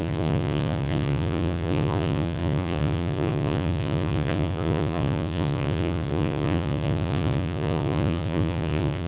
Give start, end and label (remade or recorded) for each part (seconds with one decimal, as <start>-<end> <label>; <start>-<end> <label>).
0.0-9.1 remade